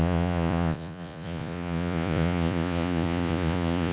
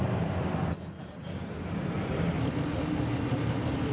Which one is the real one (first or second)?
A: second